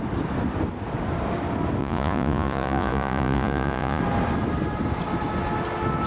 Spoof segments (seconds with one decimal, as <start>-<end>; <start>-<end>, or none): 1.8-4.0